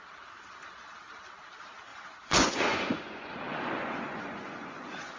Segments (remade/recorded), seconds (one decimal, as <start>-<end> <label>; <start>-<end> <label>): 0.0-1.9 recorded; 1.9-5.2 remade